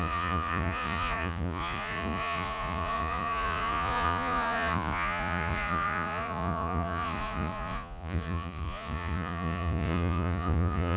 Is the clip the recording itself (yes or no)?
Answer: no